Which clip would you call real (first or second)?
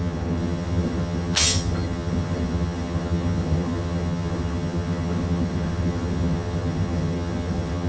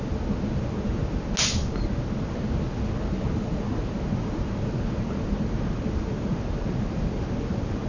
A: second